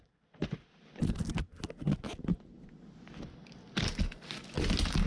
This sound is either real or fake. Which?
real